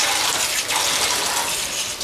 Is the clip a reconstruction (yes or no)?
no